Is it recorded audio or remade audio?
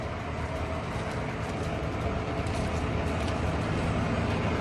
recorded